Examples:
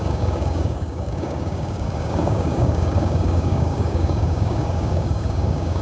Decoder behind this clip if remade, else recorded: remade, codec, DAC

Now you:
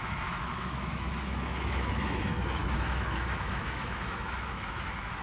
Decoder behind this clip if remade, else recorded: remade, autoencoder, DAC-VAE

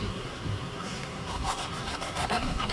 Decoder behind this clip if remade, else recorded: remade, codec, SNAC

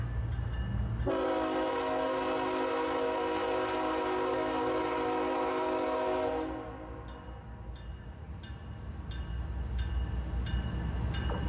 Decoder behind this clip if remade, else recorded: recorded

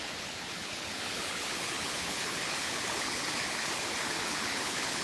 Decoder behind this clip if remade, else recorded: remade, codec, HILCodec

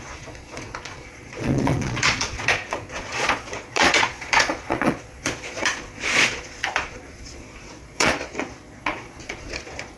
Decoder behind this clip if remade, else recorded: remade, vocoder, Vocos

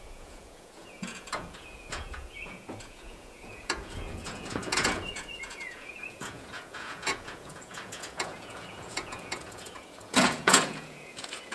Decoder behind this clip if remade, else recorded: remade, vocoder, Vocos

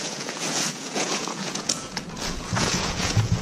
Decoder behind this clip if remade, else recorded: remade, vocoder, Vocos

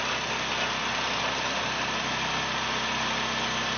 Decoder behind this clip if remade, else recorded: recorded